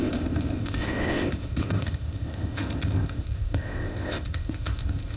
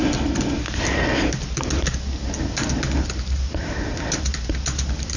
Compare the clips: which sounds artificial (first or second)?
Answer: first